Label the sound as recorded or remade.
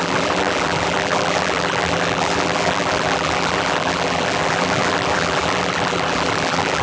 remade